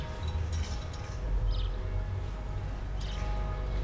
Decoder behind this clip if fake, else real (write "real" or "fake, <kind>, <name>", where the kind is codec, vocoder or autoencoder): real